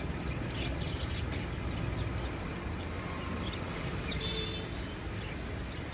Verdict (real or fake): real